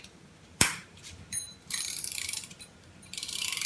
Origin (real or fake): fake